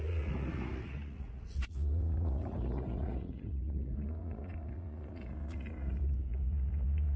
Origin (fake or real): fake